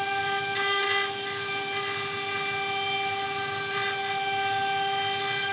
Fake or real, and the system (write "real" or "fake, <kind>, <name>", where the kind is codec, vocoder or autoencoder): real